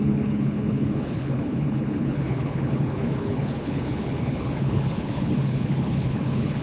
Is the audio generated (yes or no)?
yes